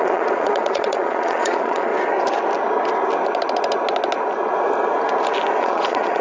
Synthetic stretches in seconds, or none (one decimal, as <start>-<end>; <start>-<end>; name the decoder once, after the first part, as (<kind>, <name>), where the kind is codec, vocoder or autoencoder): 0.0-1.9 (vocoder, Vocos); 5.6-6.2